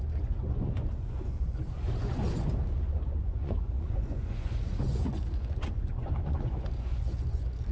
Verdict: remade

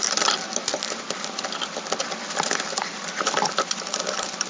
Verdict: recorded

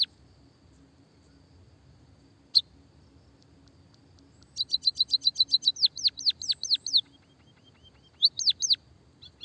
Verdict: recorded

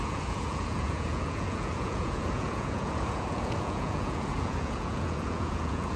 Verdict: remade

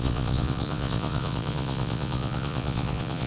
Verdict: remade